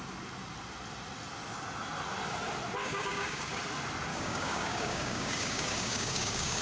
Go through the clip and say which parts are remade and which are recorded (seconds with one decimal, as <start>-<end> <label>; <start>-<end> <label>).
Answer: 0.0-2.8 recorded; 2.8-3.6 remade; 3.6-4.1 recorded; 4.1-6.6 remade